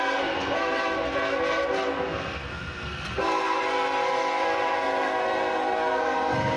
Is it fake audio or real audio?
fake